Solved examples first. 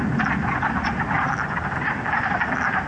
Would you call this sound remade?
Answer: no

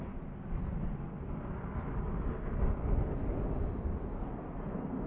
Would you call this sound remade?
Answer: no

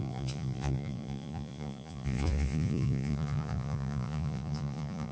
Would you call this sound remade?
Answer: yes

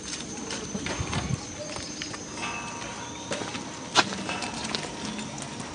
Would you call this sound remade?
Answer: no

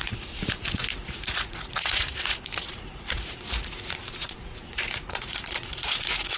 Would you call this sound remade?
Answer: yes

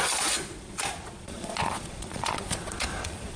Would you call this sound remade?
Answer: yes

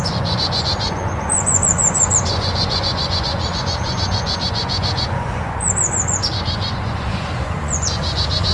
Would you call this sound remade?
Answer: yes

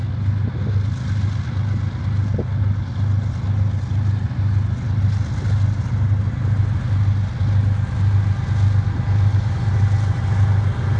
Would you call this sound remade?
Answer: no